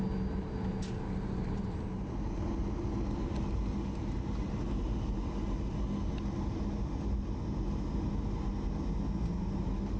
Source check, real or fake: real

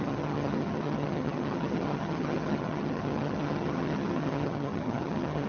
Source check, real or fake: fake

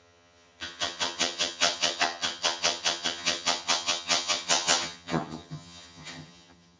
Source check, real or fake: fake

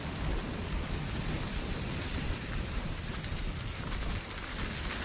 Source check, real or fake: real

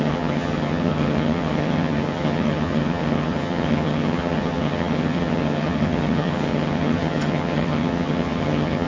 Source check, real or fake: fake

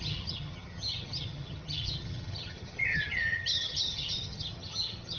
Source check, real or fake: fake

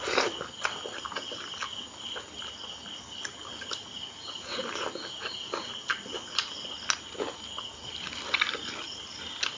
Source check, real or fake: real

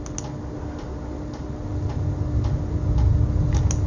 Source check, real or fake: real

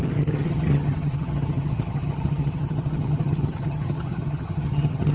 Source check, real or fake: fake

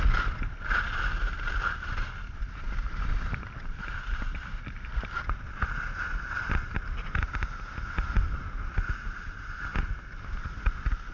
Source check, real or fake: real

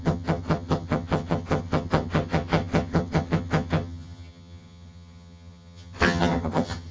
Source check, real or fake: fake